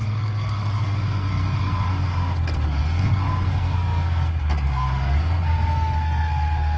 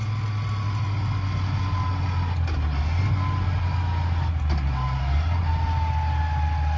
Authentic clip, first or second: second